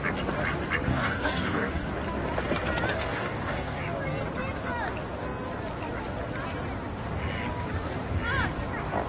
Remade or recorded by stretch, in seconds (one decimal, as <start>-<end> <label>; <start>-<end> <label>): 0.0-0.9 recorded; 0.9-1.9 remade; 1.9-2.9 recorded; 2.9-3.8 remade; 3.8-9.1 recorded